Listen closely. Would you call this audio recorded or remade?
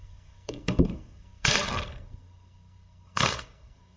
remade